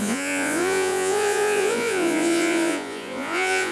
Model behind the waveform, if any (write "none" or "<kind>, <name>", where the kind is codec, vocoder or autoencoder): vocoder, Vocos